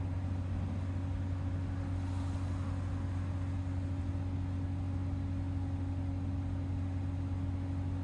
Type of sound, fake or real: real